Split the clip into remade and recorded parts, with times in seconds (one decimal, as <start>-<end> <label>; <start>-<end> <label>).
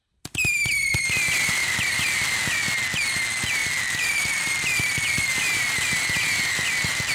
0.0-1.6 recorded; 1.6-2.5 remade; 2.5-3.6 recorded; 3.6-5.6 remade; 5.6-7.1 recorded